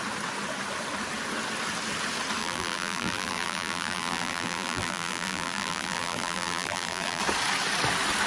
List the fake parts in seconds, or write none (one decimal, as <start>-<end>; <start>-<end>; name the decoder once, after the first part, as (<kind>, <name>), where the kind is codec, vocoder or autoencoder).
2.4-7.2 (vocoder, BigVGAN v2)